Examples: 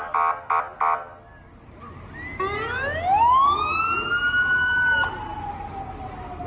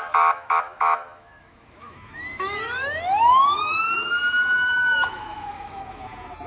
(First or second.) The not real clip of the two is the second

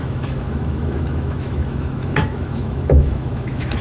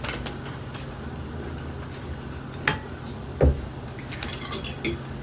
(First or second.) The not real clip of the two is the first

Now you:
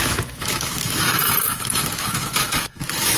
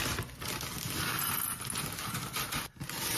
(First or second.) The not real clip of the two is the first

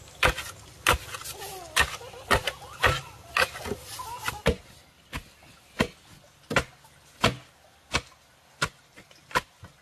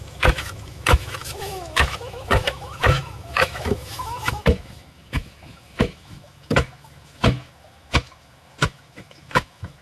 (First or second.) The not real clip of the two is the second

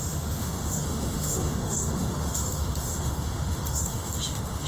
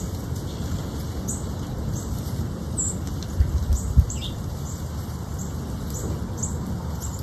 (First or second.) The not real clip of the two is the first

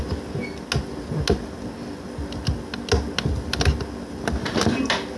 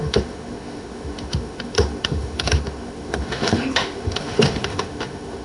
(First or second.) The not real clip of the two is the second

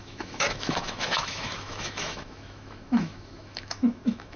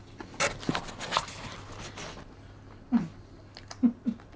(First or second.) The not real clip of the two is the first